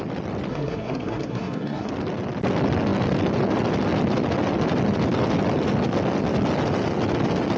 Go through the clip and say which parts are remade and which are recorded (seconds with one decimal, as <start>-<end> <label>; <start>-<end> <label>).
0.0-0.5 recorded; 0.5-1.9 remade; 1.9-7.6 recorded